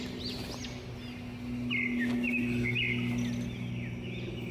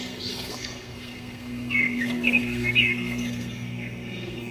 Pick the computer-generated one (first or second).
second